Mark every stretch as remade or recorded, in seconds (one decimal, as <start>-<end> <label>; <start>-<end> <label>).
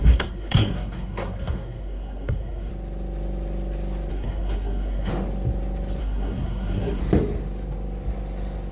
0.0-2.7 remade; 2.7-4.1 recorded; 4.1-5.1 remade; 5.1-6.0 recorded; 6.0-7.0 remade; 7.0-8.7 recorded